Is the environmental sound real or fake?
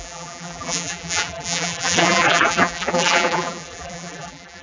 fake